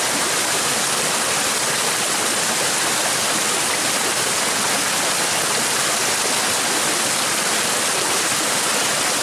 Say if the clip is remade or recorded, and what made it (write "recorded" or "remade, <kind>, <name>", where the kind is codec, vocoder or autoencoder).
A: recorded